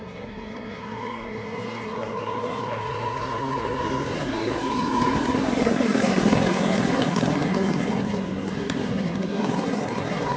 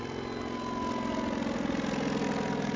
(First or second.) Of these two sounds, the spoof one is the first